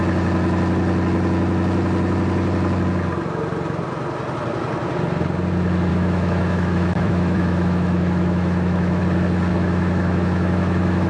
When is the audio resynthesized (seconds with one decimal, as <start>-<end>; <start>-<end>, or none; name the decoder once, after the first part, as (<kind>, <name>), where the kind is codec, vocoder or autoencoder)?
5.9-9.0 (autoencoder, DAC-VAE); 9.5-11.1